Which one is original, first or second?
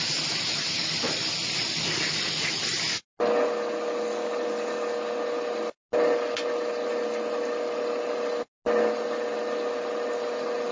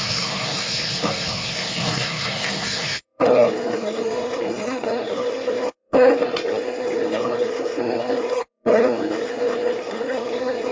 first